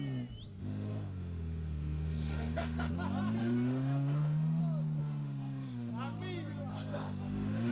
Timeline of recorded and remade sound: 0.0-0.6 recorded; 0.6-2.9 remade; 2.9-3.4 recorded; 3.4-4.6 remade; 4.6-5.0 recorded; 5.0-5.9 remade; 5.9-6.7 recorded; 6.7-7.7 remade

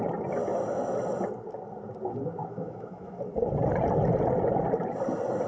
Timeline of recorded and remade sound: 0.0-2.4 recorded; 2.4-3.2 remade; 3.2-5.5 recorded

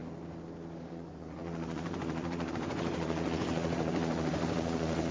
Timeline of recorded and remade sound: 0.0-0.9 recorded; 0.9-5.1 remade

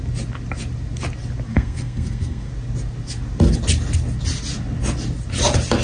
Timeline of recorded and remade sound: 0.0-1.5 recorded; 1.5-2.5 remade; 2.5-5.8 recorded

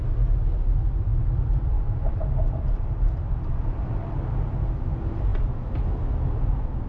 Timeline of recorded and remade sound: 0.0-1.1 recorded; 1.1-4.5 remade; 4.5-6.9 recorded

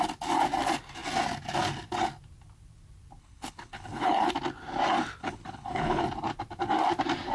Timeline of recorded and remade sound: 0.0-3.2 recorded; 3.2-4.3 remade; 4.3-5.2 recorded; 5.2-6.0 remade; 6.0-7.3 recorded

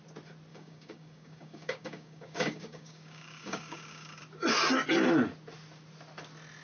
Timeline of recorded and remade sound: 0.0-0.5 recorded; 0.5-4.2 remade; 4.2-6.6 recorded

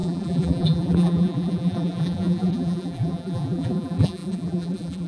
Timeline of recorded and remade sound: 0.0-5.1 remade